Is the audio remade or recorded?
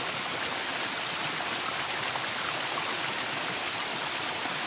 recorded